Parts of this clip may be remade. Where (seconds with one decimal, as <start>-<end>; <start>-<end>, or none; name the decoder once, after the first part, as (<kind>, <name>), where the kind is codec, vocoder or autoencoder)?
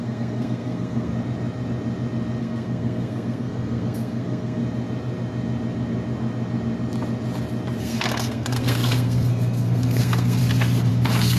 0.0-1.1 (codec, SNAC); 2.4-4.6; 7.8-10.4; 10.9-11.4